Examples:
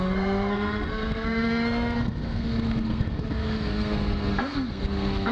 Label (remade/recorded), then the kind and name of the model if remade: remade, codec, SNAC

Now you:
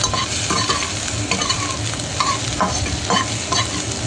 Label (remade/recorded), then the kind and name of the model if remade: recorded